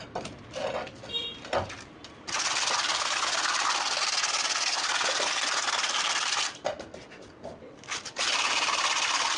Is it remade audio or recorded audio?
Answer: recorded